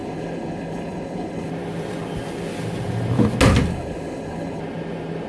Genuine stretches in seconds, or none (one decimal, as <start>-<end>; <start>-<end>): 1.5-3.7; 4.6-5.3